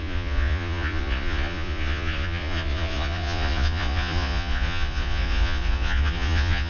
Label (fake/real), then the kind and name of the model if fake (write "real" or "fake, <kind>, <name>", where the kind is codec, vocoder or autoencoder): fake, vocoder, Vocos